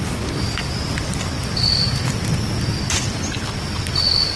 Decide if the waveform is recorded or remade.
recorded